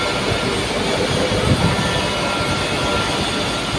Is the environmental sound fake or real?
real